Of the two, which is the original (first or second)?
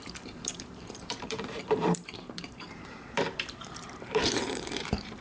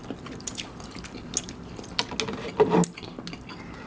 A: second